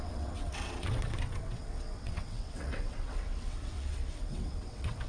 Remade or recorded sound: remade